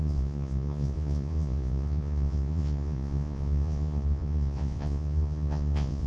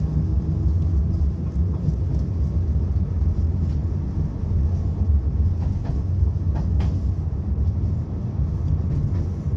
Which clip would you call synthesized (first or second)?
first